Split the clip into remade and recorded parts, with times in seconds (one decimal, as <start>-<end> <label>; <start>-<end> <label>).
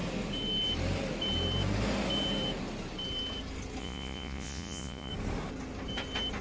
0.0-3.8 recorded; 3.8-5.1 remade; 5.1-6.4 recorded